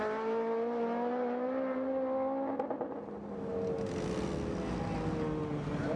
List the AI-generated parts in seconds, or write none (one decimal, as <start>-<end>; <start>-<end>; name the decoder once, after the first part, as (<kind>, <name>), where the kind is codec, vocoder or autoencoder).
none